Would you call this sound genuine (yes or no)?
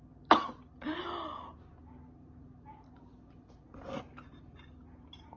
yes